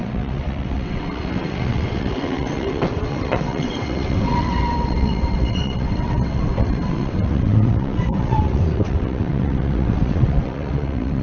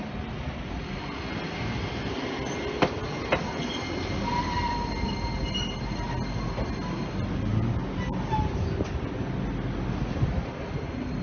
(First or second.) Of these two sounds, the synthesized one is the first